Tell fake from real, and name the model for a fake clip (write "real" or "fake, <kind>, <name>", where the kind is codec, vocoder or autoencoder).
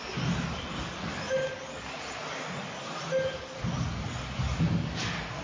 real